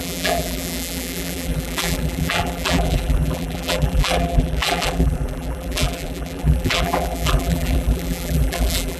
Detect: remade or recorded remade